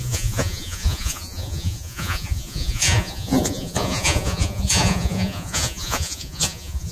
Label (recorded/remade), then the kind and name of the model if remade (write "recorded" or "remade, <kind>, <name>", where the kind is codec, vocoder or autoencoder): remade, vocoder, Vocos